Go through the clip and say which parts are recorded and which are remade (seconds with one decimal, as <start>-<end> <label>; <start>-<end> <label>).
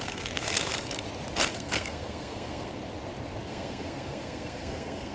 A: 0.0-0.7 remade; 0.7-1.5 recorded; 1.5-2.8 remade; 2.8-3.4 recorded; 3.4-5.1 remade